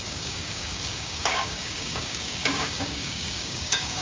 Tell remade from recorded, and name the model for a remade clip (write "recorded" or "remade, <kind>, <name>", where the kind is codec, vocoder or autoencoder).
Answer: remade, codec, DAC